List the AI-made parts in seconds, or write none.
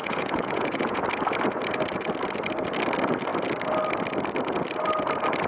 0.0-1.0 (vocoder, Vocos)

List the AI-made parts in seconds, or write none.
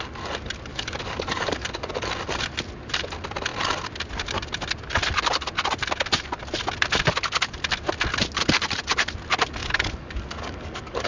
0.7-2.1 (codec, DAC); 9.6-11.1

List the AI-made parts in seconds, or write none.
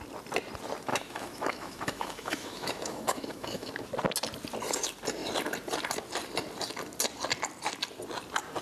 0.9-3.7 (autoencoder, DAC-VAE)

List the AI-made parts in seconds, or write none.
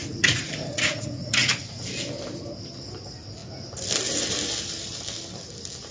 0.0-1.8 (vocoder, Vocos)